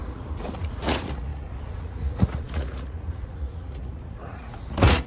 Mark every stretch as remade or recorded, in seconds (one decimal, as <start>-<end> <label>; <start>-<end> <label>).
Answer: 0.0-5.1 remade